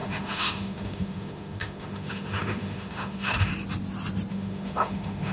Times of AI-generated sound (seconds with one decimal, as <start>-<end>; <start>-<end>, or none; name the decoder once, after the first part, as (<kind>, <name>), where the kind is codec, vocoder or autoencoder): 0.0-3.5 (autoencoder, DAC-VAE); 4.3-5.3